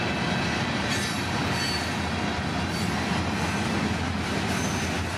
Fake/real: real